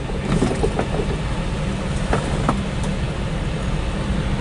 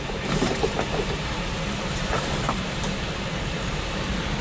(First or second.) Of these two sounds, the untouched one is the first